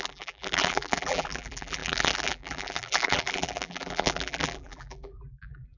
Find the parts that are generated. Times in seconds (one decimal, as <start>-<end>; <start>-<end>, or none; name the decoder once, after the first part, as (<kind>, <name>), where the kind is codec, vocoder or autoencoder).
0.0-5.8 (vocoder, BigVGAN v2)